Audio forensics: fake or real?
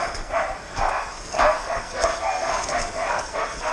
fake